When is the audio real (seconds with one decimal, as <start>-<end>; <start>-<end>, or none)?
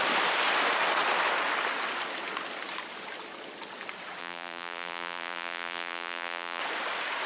0.0-4.2; 6.6-7.3